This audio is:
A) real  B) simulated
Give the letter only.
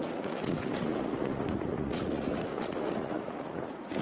B